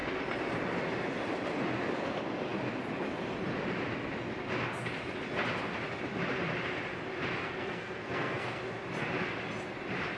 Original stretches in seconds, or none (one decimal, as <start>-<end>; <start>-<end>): 0.0-7.4; 8.6-10.2